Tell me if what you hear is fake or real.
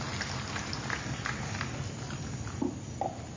real